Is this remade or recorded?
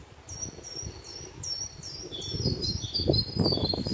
recorded